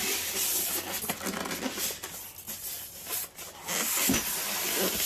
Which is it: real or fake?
real